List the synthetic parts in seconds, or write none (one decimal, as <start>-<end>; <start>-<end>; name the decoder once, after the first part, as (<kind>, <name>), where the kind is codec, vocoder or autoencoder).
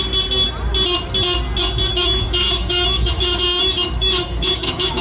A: 1.9-5.0 (autoencoder, DAC-VAE)